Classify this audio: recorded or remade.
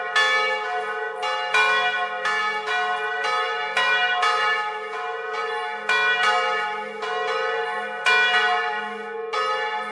recorded